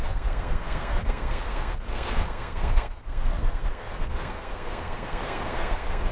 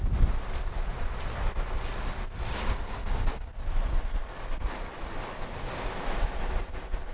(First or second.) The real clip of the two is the second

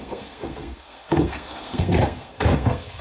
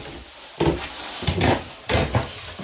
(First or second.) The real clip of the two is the second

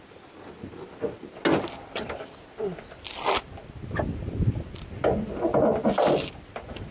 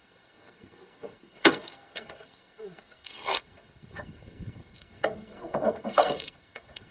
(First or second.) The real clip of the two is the first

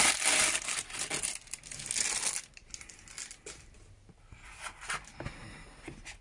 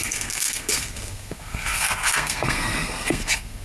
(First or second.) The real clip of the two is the first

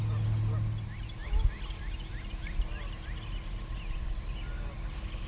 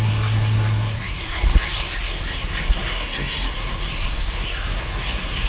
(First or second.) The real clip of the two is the first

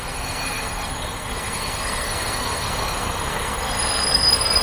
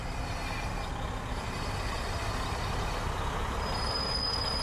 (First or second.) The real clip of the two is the second